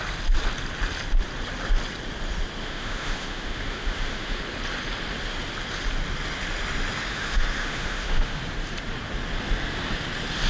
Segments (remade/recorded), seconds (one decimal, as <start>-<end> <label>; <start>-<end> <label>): 0.0-2.6 recorded; 2.6-4.4 remade; 4.4-7.1 recorded; 7.1-8.4 remade; 8.4-10.5 recorded